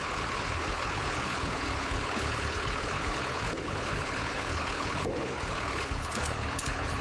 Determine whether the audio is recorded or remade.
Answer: remade